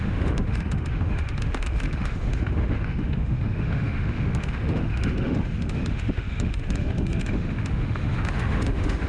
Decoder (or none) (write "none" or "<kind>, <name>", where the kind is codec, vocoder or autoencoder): autoencoder, DAC-VAE